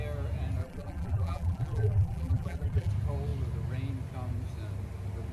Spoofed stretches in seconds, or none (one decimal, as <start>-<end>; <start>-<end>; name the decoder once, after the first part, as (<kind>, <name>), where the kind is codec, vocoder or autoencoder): 0.6-2.9 (vocoder, BigVGAN v2)